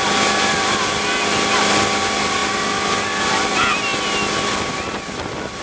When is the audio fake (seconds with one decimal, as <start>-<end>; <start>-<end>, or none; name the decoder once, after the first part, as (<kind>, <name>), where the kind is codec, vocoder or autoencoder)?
none